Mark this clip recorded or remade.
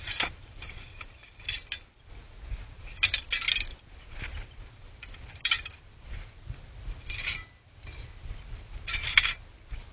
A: recorded